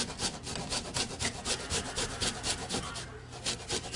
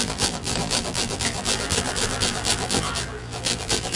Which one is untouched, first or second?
first